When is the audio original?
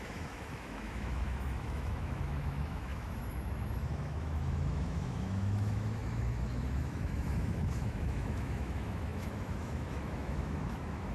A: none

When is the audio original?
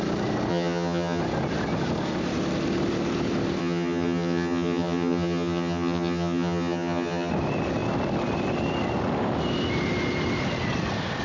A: 0.0-0.5; 1.2-3.6; 7.3-11.2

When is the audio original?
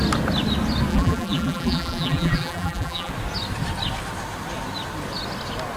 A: 0.0-0.9; 3.1-5.8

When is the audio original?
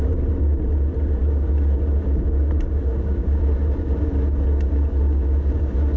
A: 0.0-6.0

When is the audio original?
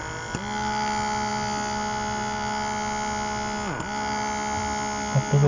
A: 0.0-5.5